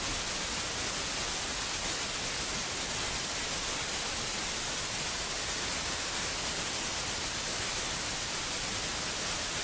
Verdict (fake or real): real